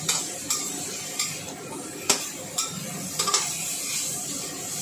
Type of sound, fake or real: real